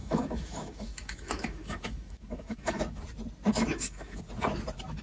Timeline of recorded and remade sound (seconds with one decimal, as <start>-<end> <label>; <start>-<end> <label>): 0.0-3.0 remade; 3.0-3.5 recorded; 3.5-4.2 remade; 4.2-5.0 recorded